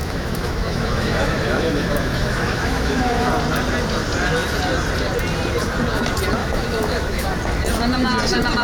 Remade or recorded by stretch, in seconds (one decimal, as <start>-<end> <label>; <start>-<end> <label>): 0.0-3.3 remade; 3.3-6.4 recorded; 6.4-7.3 remade; 7.3-8.6 recorded